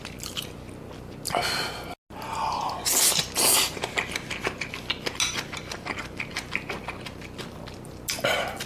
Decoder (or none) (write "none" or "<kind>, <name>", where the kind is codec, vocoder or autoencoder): none